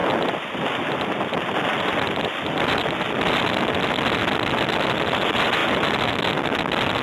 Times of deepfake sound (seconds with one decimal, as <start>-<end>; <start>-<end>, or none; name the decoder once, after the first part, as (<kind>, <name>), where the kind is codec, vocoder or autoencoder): 0.0-4.2 (vocoder, BigVGAN v2)